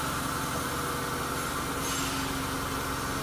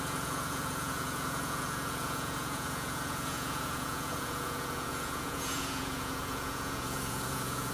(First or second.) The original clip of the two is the first